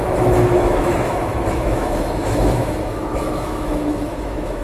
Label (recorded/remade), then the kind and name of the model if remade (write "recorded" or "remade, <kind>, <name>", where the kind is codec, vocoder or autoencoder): remade, autoencoder, DAC-VAE